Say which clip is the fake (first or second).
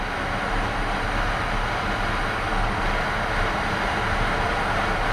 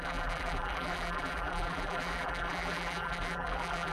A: second